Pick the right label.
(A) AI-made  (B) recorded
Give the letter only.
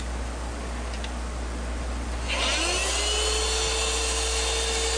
B